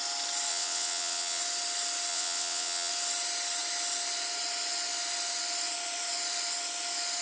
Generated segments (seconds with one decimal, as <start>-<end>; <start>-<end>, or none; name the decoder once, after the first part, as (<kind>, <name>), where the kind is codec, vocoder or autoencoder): 0.5-1.4 (vocoder, WaveNeXt); 2.1-2.9